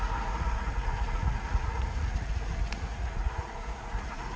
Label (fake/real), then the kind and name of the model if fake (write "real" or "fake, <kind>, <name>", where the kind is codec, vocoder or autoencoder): fake, vocoder, Vocos